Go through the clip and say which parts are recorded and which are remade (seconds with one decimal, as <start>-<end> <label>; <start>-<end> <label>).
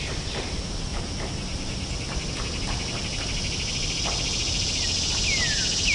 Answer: 0.0-0.9 recorded; 0.9-2.3 remade; 2.3-5.9 recorded